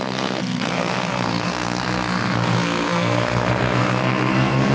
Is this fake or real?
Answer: fake